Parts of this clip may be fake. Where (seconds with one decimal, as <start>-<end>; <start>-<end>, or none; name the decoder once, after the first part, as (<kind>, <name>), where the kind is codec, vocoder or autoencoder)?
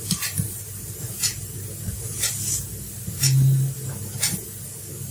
none